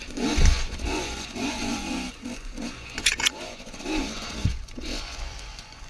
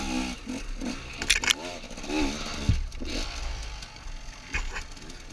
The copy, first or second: first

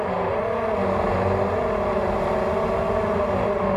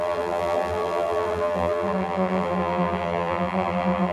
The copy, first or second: second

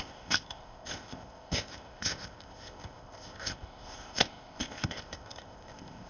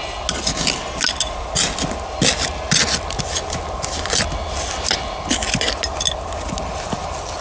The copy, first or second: first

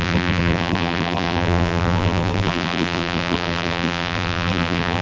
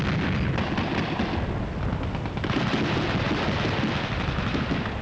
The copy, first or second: first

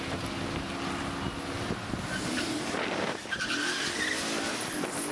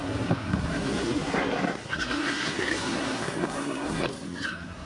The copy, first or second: second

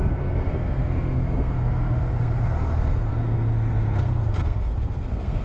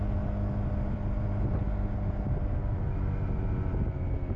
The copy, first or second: first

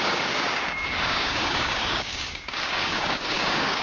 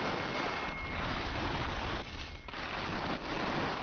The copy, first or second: first